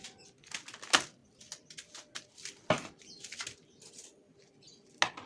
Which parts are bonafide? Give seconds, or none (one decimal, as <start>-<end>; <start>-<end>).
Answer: 0.0-5.3